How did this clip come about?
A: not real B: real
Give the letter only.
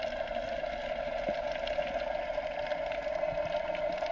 B